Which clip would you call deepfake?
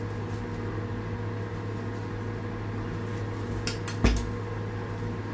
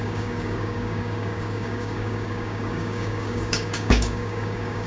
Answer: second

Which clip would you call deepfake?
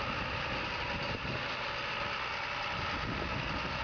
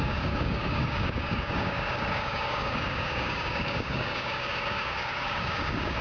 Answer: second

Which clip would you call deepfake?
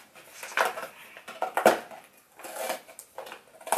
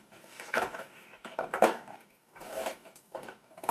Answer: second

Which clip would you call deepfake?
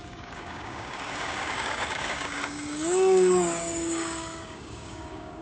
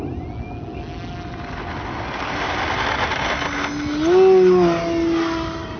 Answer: first